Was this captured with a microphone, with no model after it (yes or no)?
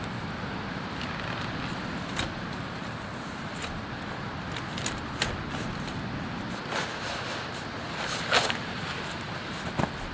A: yes